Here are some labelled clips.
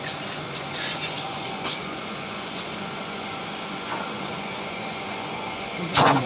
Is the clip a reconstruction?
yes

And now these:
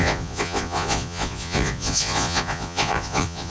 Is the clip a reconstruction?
yes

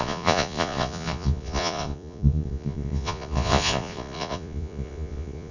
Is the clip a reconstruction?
yes